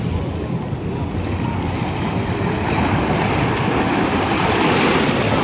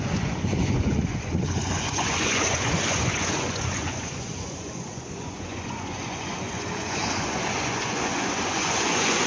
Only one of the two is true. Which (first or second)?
first